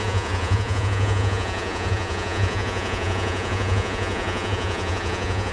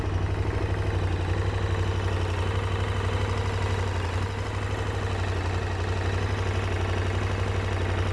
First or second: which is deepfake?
first